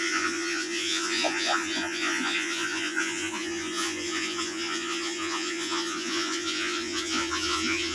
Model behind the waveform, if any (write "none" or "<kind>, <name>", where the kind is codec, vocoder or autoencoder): vocoder, Vocos